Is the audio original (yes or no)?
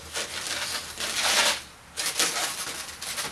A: yes